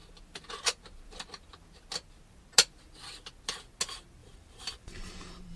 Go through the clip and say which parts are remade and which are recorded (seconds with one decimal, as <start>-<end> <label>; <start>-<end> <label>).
0.0-4.2 recorded; 4.2-5.6 remade